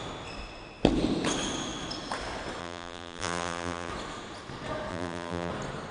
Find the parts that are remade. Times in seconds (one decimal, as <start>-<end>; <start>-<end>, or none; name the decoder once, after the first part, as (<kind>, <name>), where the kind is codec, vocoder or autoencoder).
2.6-3.9 (vocoder, BigVGAN v2); 4.9-5.5